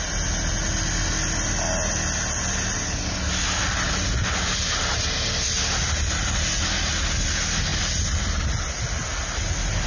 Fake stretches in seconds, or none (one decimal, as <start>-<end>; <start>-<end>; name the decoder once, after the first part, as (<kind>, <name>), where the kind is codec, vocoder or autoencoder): none